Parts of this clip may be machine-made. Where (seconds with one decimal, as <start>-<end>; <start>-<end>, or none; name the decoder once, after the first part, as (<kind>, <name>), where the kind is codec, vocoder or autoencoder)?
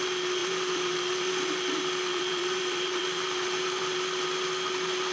0.4-1.3 (vocoder, BigVGAN v2); 2.1-3.8